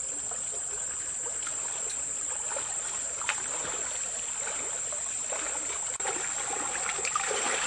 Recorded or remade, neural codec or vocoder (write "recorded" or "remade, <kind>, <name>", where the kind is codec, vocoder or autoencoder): recorded